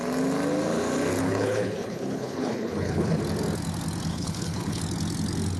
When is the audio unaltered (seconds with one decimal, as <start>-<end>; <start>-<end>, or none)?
0.0-1.2; 3.2-4.1; 4.8-5.6